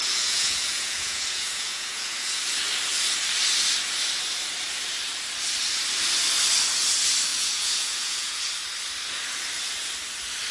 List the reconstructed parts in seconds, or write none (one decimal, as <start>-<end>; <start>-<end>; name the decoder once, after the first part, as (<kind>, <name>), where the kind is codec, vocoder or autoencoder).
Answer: 0.0-2.4 (vocoder, Vocos); 7.3-8.4